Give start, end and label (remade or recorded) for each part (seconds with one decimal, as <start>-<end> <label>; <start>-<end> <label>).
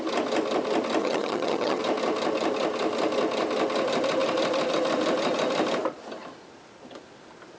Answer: 0.0-1.0 recorded; 1.0-1.8 remade; 1.8-7.6 recorded